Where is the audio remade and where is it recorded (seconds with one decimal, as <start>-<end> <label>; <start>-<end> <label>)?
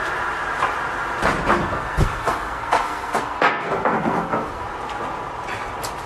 0.0-1.5 recorded; 1.5-4.6 remade; 4.6-6.1 recorded